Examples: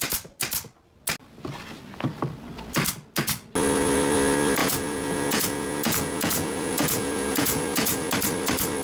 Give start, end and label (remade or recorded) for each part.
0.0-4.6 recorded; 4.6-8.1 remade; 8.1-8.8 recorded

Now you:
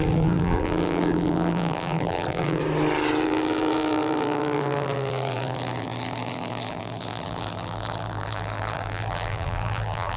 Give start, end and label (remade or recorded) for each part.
0.0-2.6 remade; 2.6-3.2 recorded; 3.2-10.2 remade

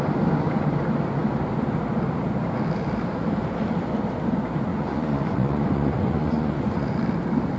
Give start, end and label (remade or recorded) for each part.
0.0-4.7 recorded; 4.7-6.9 remade; 6.9-7.6 recorded

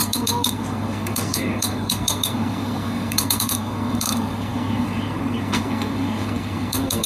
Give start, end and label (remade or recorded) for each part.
0.0-7.1 remade

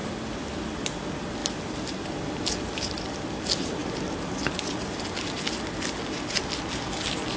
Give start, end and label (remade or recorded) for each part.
0.0-0.5 remade; 0.5-1.4 recorded; 1.4-2.3 remade; 2.3-7.4 recorded

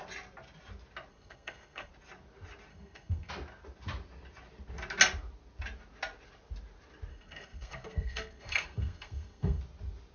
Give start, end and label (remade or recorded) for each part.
0.0-1.1 recorded; 1.1-1.9 remade; 1.9-2.7 recorded; 2.7-3.3 remade; 3.3-7.1 recorded; 7.1-9.6 remade; 9.6-10.1 recorded

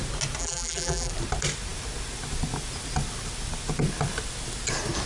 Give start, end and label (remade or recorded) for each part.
0.0-0.4 recorded; 0.4-1.1 remade; 1.1-5.1 recorded

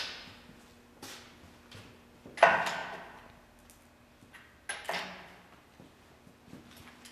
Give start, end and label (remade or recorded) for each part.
0.0-7.1 recorded